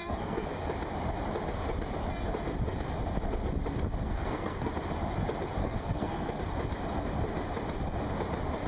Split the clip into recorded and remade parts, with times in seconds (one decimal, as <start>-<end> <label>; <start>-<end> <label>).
0.0-0.5 remade; 0.5-4.0 recorded; 4.0-4.7 remade; 4.7-5.6 recorded; 5.6-6.4 remade; 6.4-8.7 recorded